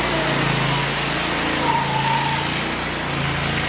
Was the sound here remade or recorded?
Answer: recorded